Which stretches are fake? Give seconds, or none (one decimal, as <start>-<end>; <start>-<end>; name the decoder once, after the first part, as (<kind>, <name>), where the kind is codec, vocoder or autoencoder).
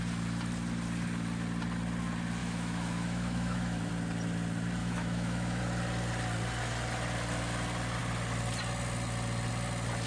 2.4-3.9 (autoencoder, DAC-VAE); 4.8-5.6